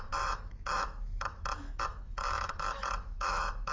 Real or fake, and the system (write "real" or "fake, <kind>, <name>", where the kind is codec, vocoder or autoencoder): fake, autoencoder, DAC-VAE